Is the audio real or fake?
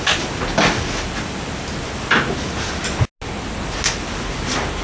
real